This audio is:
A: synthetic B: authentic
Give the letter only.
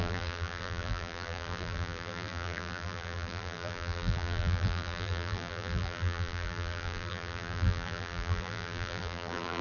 A